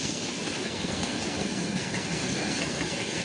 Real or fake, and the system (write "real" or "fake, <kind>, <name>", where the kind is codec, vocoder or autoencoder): fake, codec, SNAC